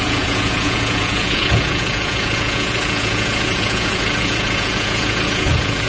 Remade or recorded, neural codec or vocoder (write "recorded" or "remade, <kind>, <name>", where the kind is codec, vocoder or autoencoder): remade, vocoder, Vocos